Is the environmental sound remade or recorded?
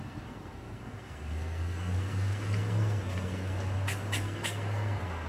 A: remade